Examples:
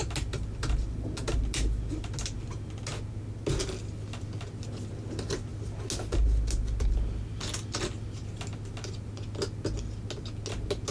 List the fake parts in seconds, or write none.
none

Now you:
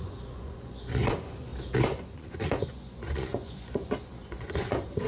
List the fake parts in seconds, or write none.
0.0-1.5 (vocoder, Vocos); 2.0-5.1

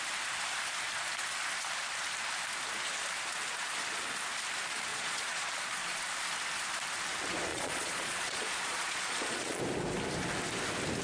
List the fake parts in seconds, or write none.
4.9-5.5 (vocoder, Vocos); 7.5-9.6

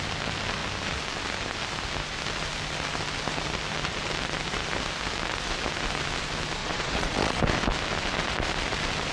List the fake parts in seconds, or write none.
6.6-7.4 (vocoder, Vocos)

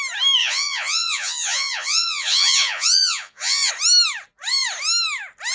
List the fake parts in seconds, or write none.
0.4-3.7 (vocoder, Vocos)